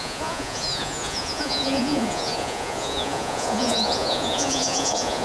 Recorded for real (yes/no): no